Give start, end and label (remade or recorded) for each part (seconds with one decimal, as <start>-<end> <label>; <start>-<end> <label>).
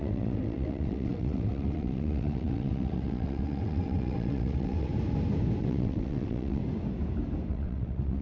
0.0-4.9 remade; 4.9-5.6 recorded; 5.6-6.6 remade; 6.6-7.5 recorded; 7.5-8.2 remade